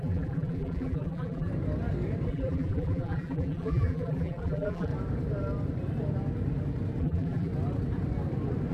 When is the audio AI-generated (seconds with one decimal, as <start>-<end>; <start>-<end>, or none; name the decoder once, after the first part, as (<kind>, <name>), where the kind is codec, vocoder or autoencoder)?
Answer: 0.0-1.5 (vocoder, BigVGAN v2); 2.3-4.9; 7.0-7.5